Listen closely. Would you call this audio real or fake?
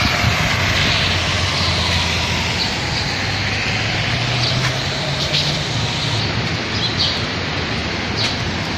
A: real